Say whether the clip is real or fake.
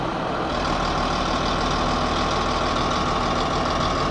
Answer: real